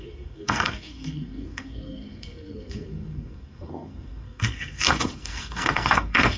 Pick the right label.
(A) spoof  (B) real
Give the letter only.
A